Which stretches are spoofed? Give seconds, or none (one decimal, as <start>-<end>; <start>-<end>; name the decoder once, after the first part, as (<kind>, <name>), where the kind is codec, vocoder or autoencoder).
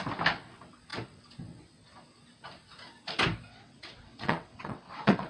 3.5-5.3 (vocoder, WaveNeXt)